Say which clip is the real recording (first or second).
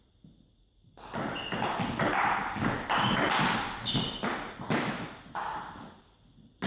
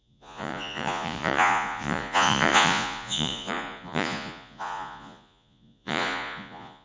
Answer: first